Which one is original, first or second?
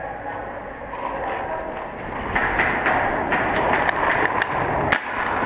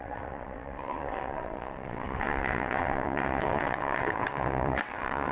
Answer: first